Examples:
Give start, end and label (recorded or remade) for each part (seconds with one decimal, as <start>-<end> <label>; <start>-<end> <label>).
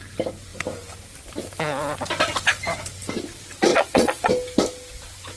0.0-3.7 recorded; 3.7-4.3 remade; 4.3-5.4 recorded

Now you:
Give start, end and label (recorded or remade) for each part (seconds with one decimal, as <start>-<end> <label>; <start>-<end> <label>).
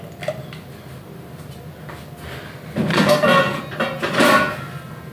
0.0-2.9 recorded; 2.9-3.6 remade; 3.6-5.1 recorded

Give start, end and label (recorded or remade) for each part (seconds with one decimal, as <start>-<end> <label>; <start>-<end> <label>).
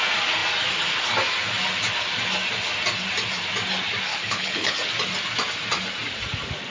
0.0-4.1 recorded; 4.1-4.7 remade; 4.7-6.7 recorded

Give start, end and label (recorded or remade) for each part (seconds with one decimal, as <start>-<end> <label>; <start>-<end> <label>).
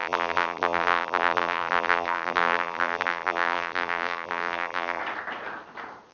0.0-5.0 remade; 5.0-6.1 recorded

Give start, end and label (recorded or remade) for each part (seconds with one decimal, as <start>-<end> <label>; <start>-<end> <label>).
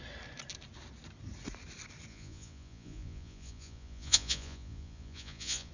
0.0-2.1 recorded; 2.1-5.7 remade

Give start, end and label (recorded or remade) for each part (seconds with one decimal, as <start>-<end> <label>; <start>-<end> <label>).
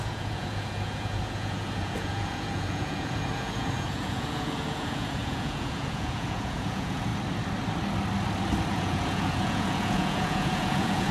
0.0-7.1 remade; 7.1-8.7 recorded; 8.7-11.1 remade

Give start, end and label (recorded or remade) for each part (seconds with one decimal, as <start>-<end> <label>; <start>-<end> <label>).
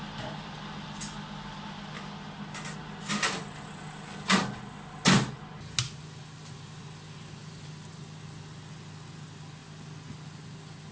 0.0-10.9 recorded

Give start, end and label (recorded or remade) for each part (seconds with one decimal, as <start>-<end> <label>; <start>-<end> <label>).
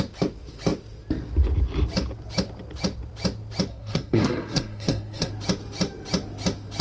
0.0-3.7 recorded; 3.7-5.3 remade; 5.3-6.8 recorded